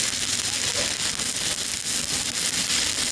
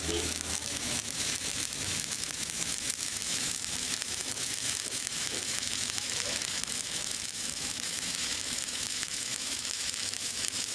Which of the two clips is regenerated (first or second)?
second